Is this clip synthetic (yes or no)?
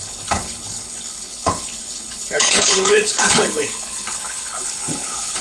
yes